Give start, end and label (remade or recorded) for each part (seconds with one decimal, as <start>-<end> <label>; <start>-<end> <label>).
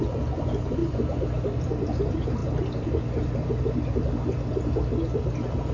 0.0-5.7 remade